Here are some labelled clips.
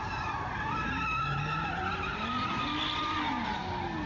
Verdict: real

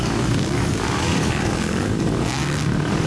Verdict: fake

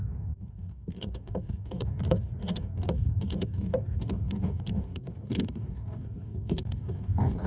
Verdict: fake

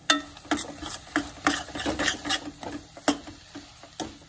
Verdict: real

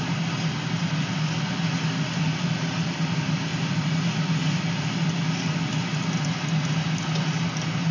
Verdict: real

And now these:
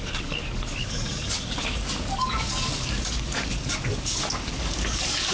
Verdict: fake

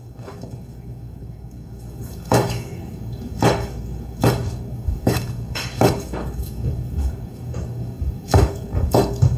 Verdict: fake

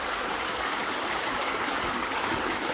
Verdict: fake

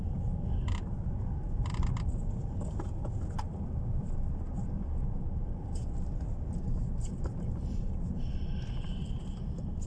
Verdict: real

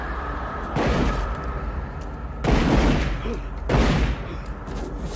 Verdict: real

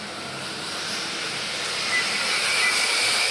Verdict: real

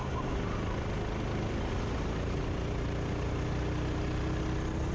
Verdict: real